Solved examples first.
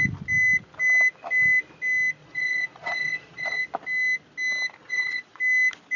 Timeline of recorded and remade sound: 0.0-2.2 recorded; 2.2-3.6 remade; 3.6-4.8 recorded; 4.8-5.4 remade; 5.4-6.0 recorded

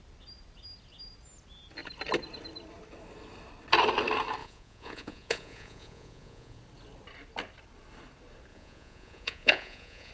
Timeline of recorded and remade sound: 0.0-4.4 recorded; 4.4-6.6 remade; 6.6-8.5 recorded; 8.5-10.1 remade

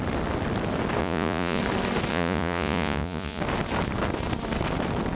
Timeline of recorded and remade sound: 0.0-1.0 recorded; 1.0-1.6 remade; 1.6-2.1 recorded; 2.1-3.4 remade; 3.4-5.1 recorded